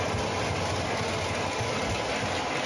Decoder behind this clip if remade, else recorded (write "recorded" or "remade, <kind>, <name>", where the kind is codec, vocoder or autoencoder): recorded